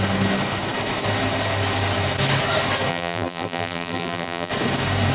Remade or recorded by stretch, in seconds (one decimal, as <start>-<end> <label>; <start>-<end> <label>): 0.0-2.9 recorded; 2.9-4.5 remade; 4.5-5.1 recorded